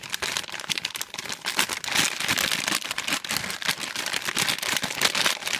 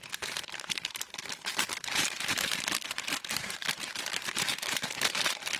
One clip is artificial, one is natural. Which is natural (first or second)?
first